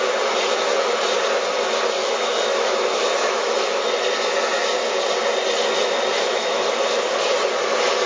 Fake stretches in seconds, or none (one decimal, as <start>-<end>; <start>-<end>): 2.0-3.9; 6.1-6.6